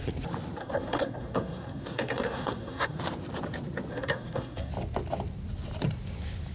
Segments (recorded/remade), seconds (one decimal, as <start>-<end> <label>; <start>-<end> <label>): 0.0-0.6 recorded; 0.6-3.0 remade; 3.0-3.9 recorded; 3.9-4.7 remade; 4.7-6.5 recorded

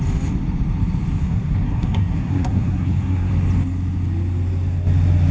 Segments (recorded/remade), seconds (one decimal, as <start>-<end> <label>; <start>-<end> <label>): 0.0-1.2 recorded; 1.2-3.3 remade; 3.3-5.3 recorded

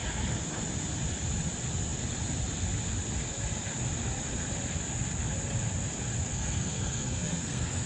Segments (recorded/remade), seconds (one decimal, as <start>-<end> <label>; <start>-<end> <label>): 0.0-6.3 recorded; 6.3-7.9 remade

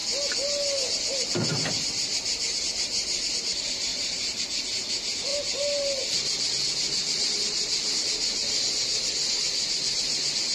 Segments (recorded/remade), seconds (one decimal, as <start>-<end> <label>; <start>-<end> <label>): 0.0-10.5 recorded

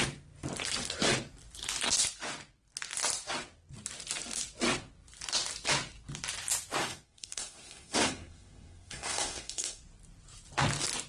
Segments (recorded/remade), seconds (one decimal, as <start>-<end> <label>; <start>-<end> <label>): 0.0-6.8 recorded; 6.8-9.8 remade; 9.8-11.1 recorded